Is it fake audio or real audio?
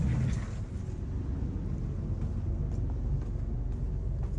real